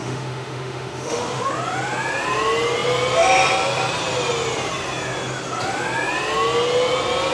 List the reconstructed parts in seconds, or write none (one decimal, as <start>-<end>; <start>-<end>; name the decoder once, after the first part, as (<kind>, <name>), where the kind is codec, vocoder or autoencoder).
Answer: 0.0-1.5 (autoencoder, DAC-VAE)